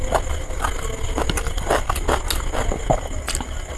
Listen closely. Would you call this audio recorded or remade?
recorded